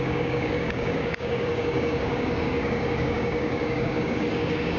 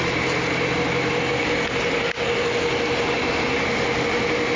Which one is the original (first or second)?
second